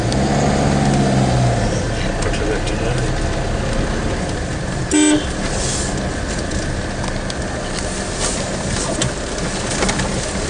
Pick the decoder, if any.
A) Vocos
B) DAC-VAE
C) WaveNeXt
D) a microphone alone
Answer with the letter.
D